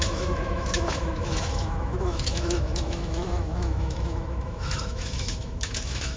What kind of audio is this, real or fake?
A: fake